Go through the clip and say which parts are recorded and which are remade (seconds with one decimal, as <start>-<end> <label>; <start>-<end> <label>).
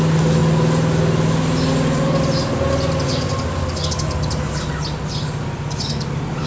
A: 0.0-6.5 recorded